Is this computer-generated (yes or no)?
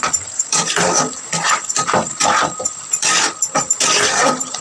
yes